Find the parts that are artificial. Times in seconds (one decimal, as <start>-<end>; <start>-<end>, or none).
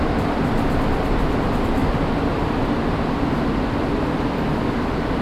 none